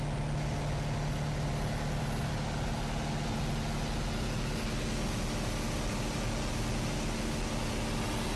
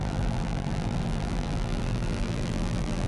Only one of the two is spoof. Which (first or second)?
second